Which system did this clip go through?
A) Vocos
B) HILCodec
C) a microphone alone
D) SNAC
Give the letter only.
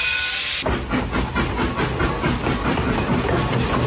C